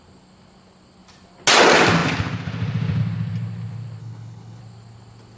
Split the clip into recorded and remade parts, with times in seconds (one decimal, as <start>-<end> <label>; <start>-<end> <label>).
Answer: 0.0-4.0 recorded; 4.0-4.6 remade; 4.6-5.4 recorded